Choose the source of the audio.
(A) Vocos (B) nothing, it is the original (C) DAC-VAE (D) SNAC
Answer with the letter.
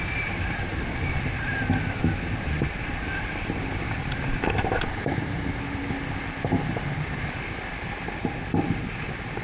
B